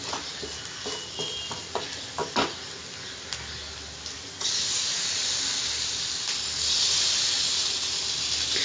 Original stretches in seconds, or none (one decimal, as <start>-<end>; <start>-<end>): 0.0-8.6